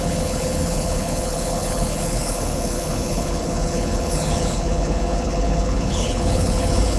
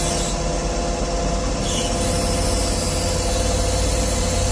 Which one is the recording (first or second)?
second